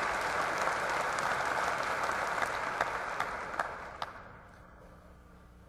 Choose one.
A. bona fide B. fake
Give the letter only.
A